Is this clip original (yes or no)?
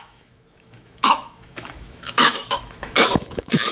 no